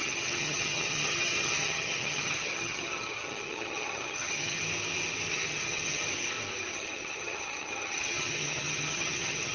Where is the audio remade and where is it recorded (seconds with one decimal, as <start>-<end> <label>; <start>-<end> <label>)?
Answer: 0.0-4.6 remade; 4.6-5.3 recorded; 5.3-6.0 remade; 6.0-6.7 recorded; 6.7-9.5 remade